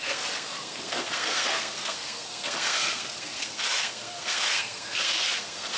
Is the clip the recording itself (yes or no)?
no